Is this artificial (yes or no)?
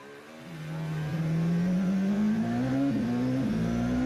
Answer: no